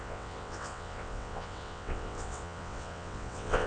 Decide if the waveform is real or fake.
fake